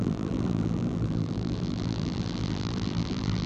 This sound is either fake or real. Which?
fake